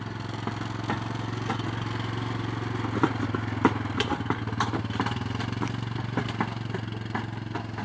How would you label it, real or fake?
real